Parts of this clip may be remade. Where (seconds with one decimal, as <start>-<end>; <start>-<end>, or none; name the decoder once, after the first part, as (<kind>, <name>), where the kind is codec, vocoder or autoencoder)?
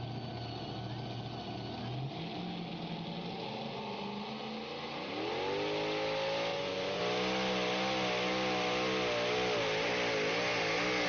6.5-7.0 (vocoder, Vocos)